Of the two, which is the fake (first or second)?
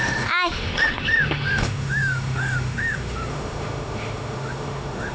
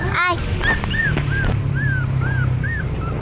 first